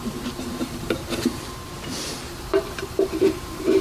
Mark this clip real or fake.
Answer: fake